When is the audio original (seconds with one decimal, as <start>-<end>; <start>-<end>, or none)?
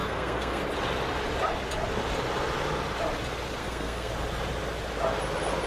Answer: 0.6-3.6; 4.1-5.7